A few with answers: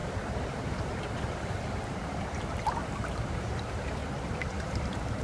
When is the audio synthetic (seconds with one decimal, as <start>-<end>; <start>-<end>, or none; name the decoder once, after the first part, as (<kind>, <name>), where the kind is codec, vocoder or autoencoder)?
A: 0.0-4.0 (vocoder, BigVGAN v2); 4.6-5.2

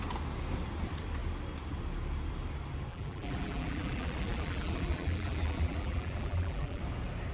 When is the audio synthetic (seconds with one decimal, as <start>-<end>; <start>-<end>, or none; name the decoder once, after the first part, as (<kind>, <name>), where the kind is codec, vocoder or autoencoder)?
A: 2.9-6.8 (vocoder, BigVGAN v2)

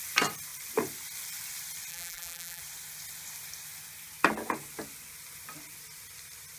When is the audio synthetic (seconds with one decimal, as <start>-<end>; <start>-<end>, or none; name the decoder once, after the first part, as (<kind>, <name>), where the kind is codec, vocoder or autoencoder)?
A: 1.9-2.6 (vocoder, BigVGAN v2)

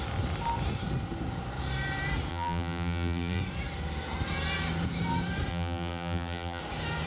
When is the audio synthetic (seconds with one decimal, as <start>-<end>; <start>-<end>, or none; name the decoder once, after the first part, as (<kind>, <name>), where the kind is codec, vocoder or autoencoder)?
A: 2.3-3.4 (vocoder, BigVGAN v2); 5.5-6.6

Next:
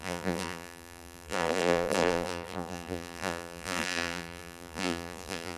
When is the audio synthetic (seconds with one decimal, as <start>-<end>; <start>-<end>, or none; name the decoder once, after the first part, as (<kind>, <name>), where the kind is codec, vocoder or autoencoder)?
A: 0.0-5.6 (vocoder, BigVGAN v2)